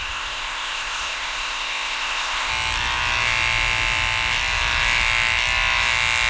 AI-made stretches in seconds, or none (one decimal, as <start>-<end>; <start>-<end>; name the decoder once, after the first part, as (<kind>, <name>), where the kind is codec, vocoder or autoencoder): 0.0-2.5 (codec, ZipCodec)